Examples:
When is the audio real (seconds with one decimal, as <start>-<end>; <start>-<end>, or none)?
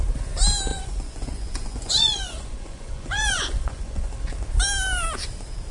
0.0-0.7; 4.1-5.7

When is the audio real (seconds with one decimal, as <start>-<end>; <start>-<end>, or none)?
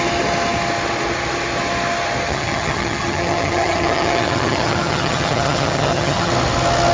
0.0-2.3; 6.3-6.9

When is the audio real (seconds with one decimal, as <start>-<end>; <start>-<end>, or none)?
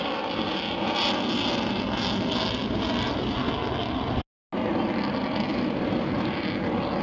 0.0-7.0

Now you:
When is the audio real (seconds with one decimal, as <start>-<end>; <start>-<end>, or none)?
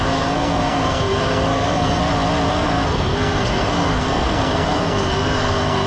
2.0-2.5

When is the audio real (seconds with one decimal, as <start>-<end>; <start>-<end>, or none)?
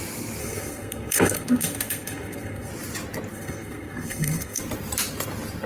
0.0-0.4; 2.7-3.3; 4.6-5.7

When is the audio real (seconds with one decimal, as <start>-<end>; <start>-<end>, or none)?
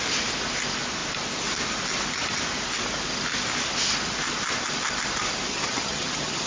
0.0-5.5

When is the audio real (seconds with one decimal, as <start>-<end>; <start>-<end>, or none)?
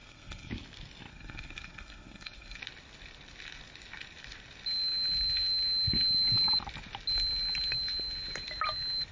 0.5-1.1; 2.6-9.1